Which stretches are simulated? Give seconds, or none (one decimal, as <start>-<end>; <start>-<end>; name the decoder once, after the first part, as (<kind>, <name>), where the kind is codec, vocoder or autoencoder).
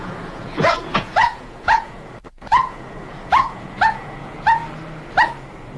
0.0-4.6 (vocoder, Vocos)